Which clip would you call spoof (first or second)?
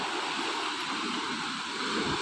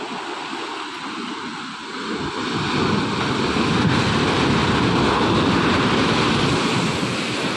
first